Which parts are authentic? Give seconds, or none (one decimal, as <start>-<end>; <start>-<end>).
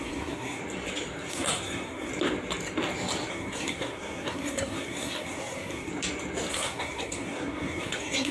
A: 0.6-1.3; 2.1-3.3; 5.9-6.5